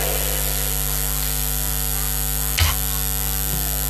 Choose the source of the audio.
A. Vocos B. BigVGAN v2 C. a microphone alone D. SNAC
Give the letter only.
C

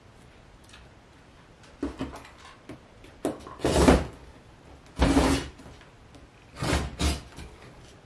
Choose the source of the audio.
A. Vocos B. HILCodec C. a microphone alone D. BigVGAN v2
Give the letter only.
C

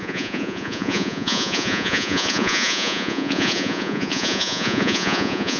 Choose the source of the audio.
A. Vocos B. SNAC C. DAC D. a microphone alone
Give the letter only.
A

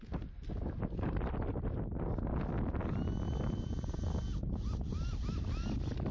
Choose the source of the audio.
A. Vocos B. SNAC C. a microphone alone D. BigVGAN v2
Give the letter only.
C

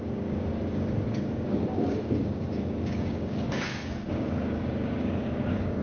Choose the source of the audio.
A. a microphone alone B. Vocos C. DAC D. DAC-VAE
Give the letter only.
C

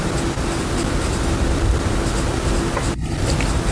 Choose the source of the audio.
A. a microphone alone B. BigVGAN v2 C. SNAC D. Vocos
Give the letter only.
A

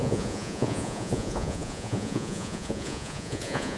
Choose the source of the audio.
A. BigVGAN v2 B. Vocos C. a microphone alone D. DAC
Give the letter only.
B